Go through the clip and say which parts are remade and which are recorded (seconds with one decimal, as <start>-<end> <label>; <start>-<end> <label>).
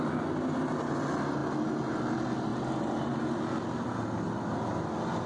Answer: 0.0-5.3 recorded